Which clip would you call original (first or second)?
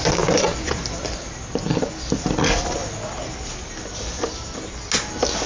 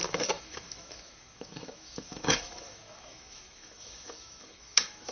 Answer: first